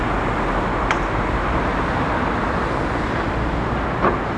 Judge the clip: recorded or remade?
recorded